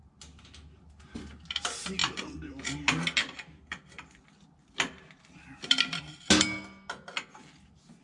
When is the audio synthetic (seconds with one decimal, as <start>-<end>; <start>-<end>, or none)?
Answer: none